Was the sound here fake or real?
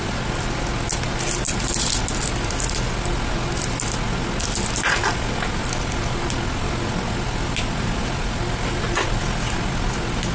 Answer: real